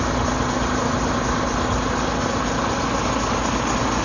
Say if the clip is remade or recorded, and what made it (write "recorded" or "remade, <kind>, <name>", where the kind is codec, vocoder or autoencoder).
recorded